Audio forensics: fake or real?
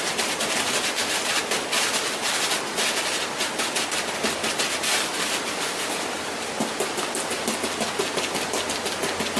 real